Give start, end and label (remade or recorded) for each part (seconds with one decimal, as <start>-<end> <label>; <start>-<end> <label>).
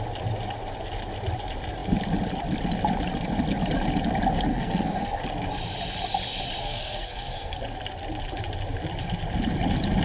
0.0-4.5 recorded; 4.5-5.2 remade; 5.2-6.6 recorded; 6.6-7.6 remade; 7.6-10.0 recorded